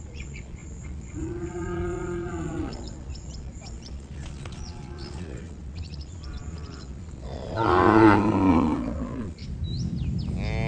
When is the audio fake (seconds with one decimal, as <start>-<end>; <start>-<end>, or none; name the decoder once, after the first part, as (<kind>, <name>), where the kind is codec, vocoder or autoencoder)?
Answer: 0.0-9.4 (vocoder, Vocos)